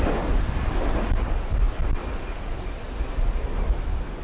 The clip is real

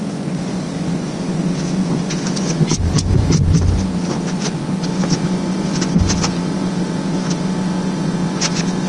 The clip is fake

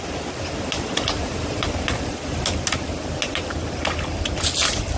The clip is real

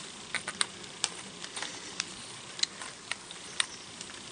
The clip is real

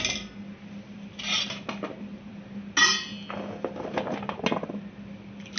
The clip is real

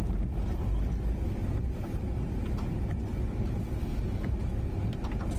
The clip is real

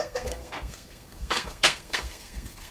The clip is fake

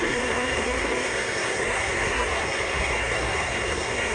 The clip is fake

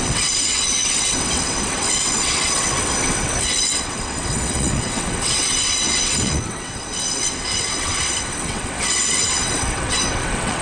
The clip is fake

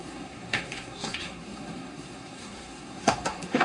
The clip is fake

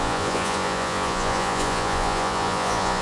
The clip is fake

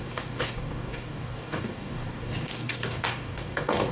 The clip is fake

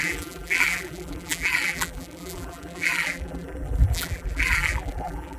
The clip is fake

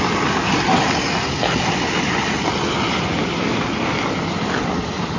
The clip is real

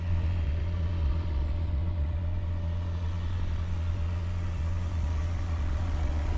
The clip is fake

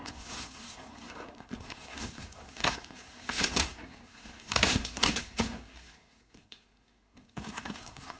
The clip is fake